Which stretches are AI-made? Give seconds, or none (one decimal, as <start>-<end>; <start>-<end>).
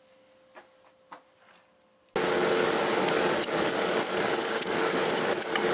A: 2.4-5.7